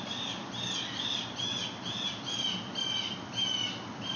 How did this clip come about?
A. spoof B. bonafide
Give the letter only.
B